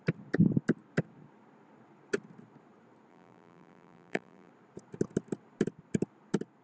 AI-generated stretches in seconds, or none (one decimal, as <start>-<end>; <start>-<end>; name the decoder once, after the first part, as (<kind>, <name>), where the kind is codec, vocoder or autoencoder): 3.1-4.5 (vocoder, BigVGAN v2)

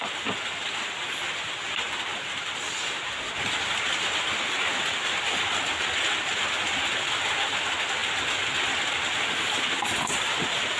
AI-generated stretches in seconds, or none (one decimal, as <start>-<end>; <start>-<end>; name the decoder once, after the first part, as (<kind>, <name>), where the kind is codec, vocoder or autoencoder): none

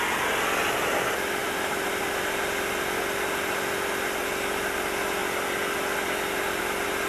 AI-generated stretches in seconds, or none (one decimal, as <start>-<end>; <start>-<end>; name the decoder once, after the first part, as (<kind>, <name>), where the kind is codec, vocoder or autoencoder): 1.4-2.0 (vocoder, BigVGAN v2)